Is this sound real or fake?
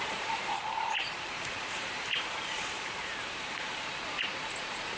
fake